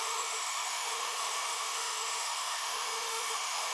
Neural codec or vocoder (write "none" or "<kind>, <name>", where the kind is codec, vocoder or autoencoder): autoencoder, DAC-VAE